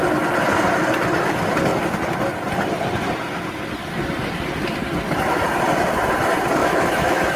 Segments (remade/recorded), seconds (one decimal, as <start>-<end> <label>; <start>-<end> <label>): 0.0-6.6 recorded; 6.6-7.4 remade